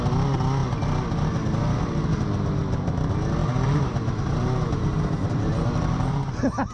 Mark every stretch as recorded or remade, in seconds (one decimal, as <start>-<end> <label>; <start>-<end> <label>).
0.0-3.4 recorded; 3.4-6.2 remade; 6.2-6.7 recorded